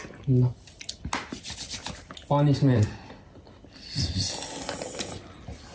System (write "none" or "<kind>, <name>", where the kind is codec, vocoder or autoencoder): none